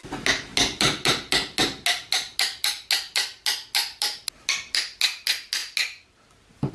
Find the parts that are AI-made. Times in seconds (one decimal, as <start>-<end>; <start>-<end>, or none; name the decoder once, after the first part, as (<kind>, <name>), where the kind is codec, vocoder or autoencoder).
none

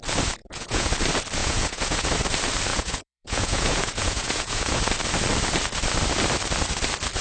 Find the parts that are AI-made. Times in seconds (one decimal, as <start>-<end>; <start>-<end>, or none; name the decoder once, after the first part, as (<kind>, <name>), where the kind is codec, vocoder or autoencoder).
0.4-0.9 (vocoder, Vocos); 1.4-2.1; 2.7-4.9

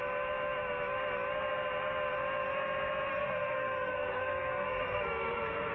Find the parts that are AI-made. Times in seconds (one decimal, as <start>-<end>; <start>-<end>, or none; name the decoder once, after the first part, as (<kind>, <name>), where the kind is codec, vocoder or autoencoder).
3.1-5.7 (codec, SNAC)